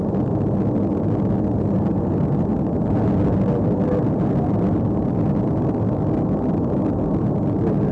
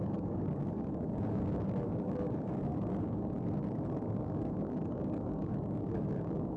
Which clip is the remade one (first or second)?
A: second